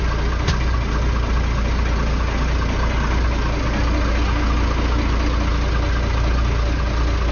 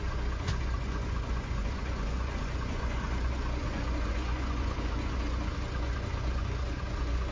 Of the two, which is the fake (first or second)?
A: second